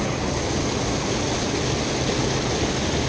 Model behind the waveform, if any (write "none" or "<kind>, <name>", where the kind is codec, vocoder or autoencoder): none